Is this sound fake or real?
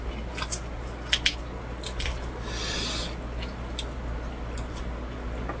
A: real